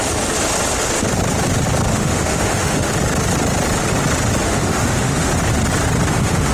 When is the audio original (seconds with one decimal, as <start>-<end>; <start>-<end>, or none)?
0.0-1.9; 2.9-4.4; 5.3-6.1